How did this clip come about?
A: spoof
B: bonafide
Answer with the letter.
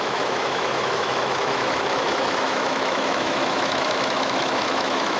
A